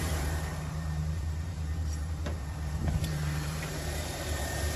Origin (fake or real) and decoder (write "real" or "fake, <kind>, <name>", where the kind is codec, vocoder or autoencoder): fake, vocoder, BigVGAN v2